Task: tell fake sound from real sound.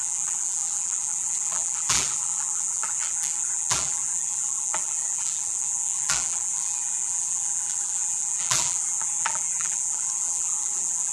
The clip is fake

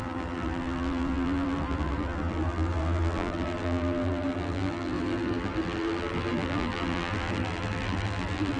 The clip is fake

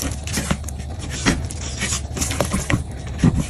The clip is real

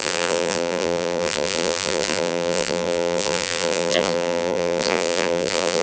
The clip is fake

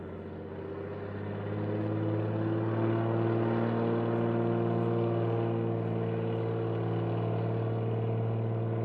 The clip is real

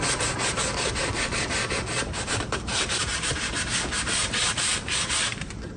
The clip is fake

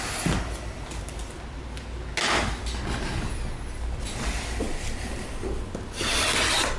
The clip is real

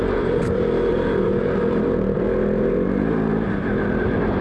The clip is fake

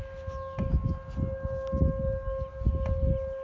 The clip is real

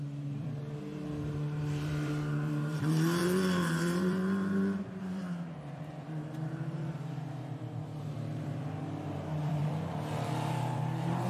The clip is fake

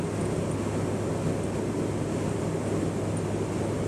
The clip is real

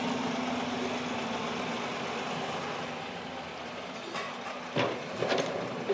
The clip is real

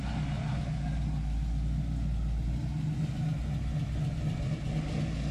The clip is real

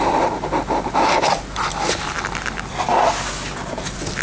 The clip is real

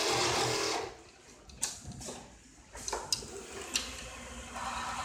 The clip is real